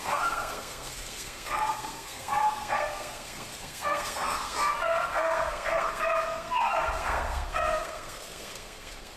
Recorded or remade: remade